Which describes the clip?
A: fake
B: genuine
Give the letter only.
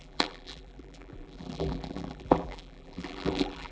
A